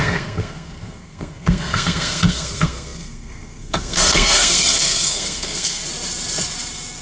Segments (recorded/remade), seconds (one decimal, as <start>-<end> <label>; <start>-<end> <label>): 0.0-5.8 remade; 5.8-7.0 recorded